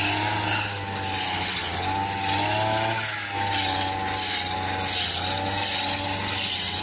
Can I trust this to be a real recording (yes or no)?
yes